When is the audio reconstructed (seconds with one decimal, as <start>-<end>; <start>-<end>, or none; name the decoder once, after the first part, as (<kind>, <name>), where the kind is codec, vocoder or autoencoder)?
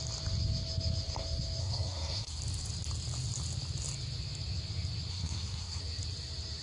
1.6-2.4 (codec, SNAC); 5.1-5.8